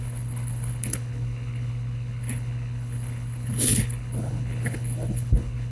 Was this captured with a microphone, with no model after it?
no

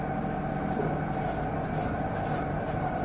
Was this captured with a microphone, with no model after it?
yes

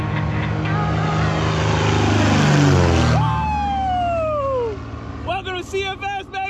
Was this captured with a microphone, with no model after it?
yes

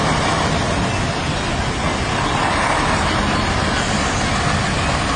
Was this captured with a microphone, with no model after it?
yes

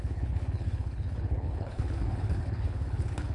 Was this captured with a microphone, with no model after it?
no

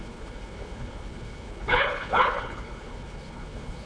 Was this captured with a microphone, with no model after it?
no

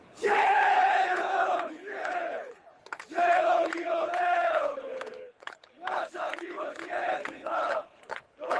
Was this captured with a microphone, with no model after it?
no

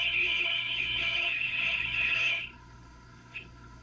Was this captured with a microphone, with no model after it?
no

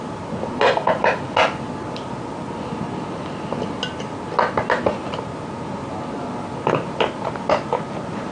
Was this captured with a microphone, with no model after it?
yes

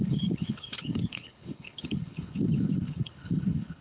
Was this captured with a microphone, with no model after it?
no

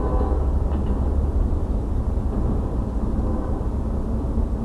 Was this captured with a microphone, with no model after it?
yes